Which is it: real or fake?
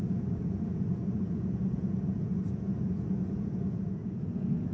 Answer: fake